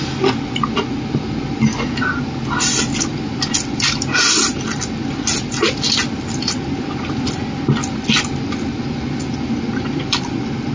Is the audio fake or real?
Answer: real